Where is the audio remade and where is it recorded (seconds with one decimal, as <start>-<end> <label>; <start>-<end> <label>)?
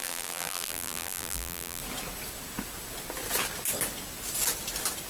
0.0-1.8 remade; 1.8-5.1 recorded